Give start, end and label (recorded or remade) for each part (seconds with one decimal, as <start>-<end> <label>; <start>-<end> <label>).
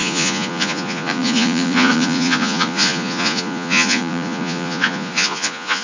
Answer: 0.0-5.8 remade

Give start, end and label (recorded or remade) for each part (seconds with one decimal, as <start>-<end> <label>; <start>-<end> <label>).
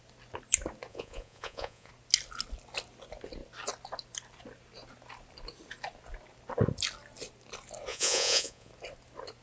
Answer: 0.0-0.9 recorded; 0.9-1.9 remade; 1.9-7.9 recorded; 7.9-8.7 remade; 8.7-9.4 recorded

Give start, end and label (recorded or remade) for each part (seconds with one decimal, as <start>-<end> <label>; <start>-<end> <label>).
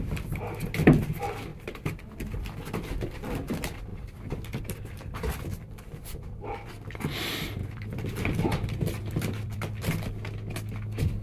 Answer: 0.0-1.5 recorded; 1.5-3.3 remade; 3.3-3.9 recorded; 3.9-6.7 remade; 6.7-7.6 recorded; 7.6-10.1 remade; 10.1-11.2 recorded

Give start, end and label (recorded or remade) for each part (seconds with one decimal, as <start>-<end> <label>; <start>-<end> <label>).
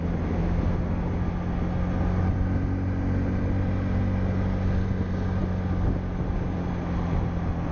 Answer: 0.0-7.7 recorded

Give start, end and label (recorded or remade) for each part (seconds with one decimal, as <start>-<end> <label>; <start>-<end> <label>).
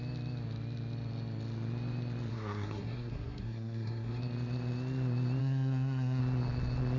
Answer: 0.0-2.3 recorded; 2.3-4.2 remade; 4.2-5.4 recorded; 5.4-6.2 remade; 6.2-7.0 recorded